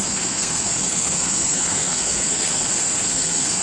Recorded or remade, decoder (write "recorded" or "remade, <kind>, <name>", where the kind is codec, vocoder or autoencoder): remade, codec, SNAC